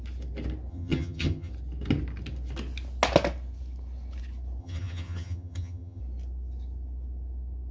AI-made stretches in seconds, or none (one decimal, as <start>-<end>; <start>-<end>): 0.7-1.5; 4.6-6.0